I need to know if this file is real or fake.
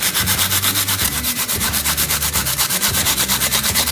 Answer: fake